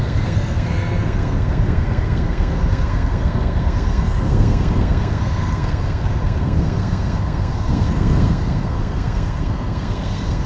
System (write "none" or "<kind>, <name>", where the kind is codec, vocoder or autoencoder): codec, SNAC